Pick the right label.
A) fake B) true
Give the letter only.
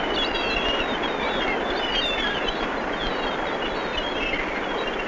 B